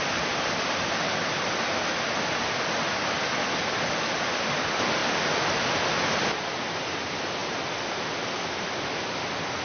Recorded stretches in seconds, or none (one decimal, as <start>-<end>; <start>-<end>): 0.0-9.6